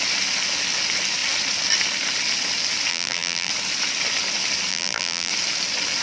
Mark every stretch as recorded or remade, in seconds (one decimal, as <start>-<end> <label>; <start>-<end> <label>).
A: 0.0-2.9 recorded; 2.9-3.5 remade; 3.5-4.7 recorded; 4.7-5.3 remade; 5.3-6.0 recorded